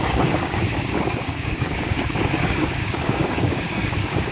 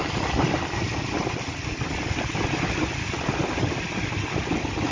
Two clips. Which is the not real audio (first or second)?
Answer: first